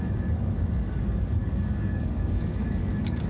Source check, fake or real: fake